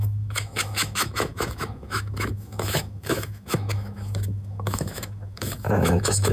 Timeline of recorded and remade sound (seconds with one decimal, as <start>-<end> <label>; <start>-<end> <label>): 0.0-6.3 remade